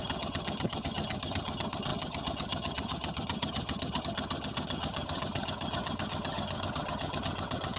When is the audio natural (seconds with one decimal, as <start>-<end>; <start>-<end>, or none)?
none